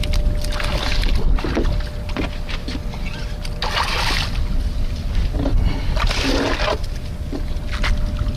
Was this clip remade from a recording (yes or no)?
no